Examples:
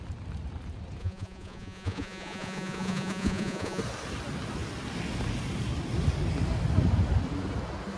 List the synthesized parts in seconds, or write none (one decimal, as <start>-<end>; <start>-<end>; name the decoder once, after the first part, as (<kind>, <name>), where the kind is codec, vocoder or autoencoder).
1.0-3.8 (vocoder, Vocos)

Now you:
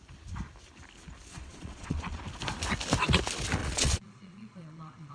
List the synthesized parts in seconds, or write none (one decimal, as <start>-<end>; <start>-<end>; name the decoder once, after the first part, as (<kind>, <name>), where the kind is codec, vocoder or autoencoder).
1.3-2.2 (vocoder, Vocos); 3.6-5.1

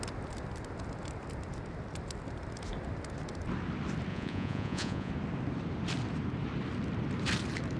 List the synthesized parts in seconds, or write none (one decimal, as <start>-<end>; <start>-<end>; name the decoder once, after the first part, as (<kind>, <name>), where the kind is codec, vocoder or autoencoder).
4.1-5.1 (vocoder, Vocos)

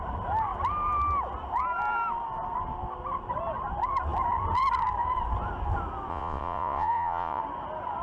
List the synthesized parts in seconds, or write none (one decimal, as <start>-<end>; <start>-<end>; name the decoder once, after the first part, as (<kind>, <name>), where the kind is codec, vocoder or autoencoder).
6.1-7.4 (vocoder, Vocos)

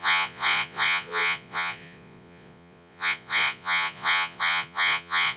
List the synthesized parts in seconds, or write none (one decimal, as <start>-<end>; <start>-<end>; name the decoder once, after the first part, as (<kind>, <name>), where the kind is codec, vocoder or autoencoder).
0.0-5.4 (vocoder, Vocos)

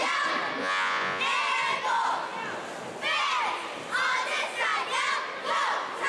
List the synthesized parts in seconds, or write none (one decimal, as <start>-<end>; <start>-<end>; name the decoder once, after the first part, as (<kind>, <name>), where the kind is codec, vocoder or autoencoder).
0.6-1.2 (vocoder, Vocos)

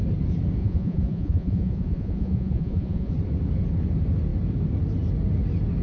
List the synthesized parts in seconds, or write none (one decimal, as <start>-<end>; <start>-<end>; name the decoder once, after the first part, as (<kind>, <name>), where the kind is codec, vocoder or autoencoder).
0.6-3.1 (vocoder, Vocos)

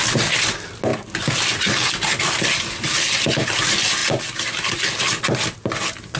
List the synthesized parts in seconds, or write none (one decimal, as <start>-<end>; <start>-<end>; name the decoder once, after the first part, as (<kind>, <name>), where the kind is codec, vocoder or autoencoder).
none